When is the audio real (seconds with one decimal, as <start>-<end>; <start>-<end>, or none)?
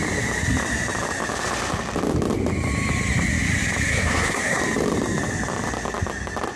0.0-3.9; 4.6-6.6